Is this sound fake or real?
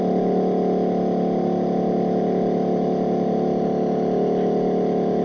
real